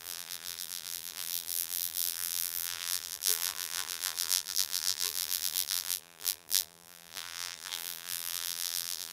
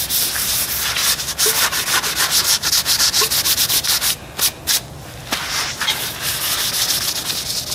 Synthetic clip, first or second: first